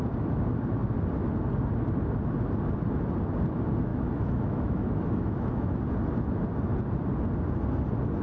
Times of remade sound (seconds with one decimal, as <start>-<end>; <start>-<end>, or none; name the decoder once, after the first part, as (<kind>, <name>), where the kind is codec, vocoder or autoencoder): 3.9-5.8 (autoencoder, DAC-VAE)